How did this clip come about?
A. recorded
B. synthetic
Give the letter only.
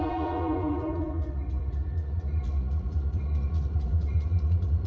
B